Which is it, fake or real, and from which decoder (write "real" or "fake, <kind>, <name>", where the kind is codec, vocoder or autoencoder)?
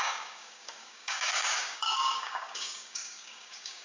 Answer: fake, codec, DAC